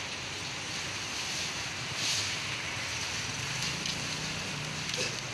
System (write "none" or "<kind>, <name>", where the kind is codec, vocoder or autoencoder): none